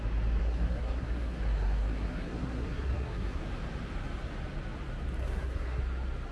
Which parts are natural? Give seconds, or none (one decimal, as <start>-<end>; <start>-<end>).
0.0-0.4; 3.4-5.2; 5.8-6.3